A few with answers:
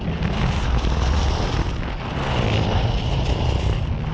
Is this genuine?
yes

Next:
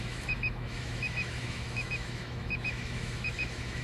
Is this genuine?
no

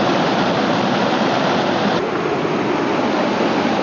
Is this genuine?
yes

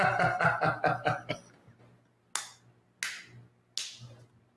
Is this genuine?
yes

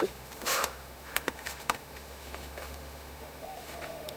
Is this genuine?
no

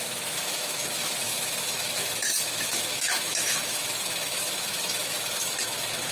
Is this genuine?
no